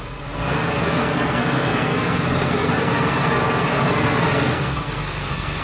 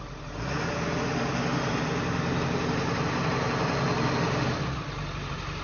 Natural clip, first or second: second